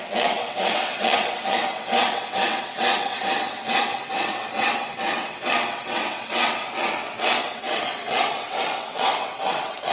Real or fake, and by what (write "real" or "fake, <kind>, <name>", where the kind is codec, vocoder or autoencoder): fake, vocoder, WaveNeXt